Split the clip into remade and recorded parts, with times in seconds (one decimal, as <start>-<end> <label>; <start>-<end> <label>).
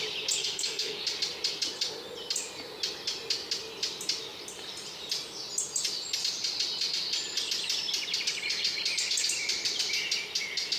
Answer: 0.0-0.4 recorded; 0.4-1.0 remade; 1.0-10.8 recorded